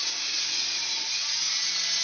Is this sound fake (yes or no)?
no